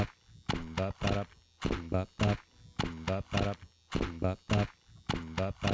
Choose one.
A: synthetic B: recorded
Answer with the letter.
B